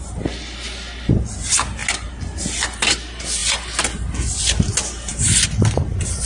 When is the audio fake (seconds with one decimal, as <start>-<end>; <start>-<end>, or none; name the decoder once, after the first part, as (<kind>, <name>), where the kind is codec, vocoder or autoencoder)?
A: none